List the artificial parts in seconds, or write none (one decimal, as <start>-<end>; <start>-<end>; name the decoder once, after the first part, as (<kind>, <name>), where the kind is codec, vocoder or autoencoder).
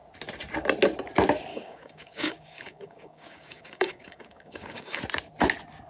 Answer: 1.5-5.0 (codec, DAC)